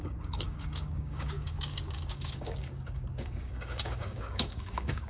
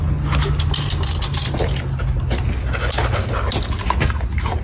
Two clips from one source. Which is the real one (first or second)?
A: second